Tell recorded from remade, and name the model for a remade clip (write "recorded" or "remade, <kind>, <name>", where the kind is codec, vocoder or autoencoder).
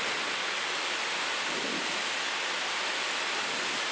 recorded